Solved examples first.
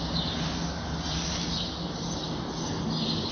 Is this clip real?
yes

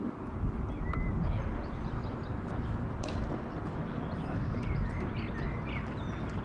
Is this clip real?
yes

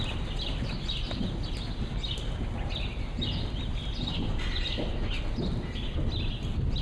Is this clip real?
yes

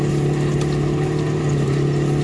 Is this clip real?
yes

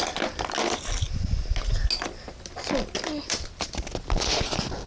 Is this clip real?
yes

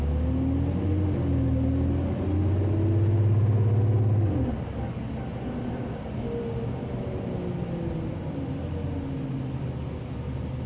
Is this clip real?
yes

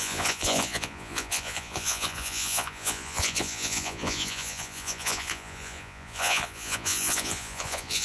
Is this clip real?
no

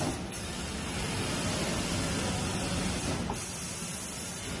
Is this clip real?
yes